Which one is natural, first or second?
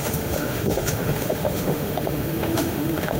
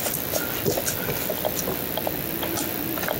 second